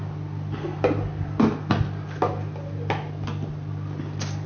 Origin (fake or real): real